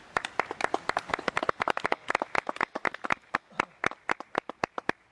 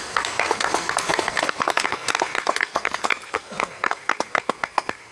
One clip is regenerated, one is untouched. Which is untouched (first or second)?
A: first